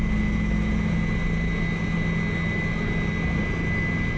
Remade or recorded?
recorded